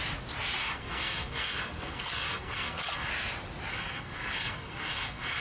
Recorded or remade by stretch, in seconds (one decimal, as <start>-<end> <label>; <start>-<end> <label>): 0.0-0.6 recorded; 0.6-3.1 remade; 3.1-3.7 recorded; 3.7-5.4 remade